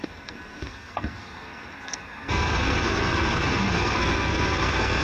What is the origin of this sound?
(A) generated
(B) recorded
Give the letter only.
A